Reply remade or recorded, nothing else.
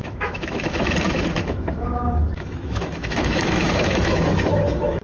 remade